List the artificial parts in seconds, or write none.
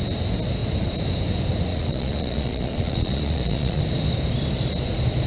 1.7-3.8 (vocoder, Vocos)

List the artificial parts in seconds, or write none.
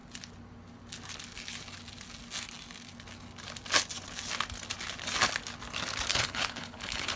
6.1-7.2 (codec, HILCodec)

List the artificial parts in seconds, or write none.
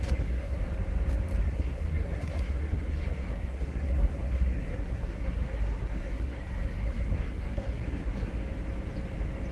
0.0-0.7 (codec, SNAC); 1.4-8.4